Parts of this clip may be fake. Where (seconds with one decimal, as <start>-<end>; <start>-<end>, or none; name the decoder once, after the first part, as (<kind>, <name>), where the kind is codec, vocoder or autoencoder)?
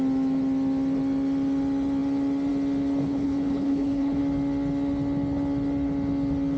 3.0-4.2 (codec, HILCodec)